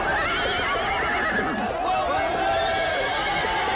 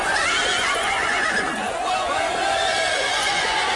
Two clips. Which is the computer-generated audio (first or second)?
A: second